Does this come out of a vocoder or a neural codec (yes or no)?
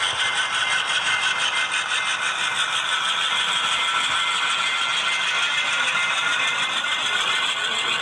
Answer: no